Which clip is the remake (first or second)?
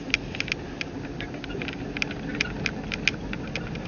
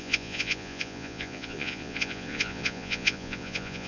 second